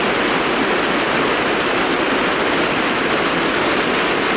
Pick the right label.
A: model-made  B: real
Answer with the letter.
B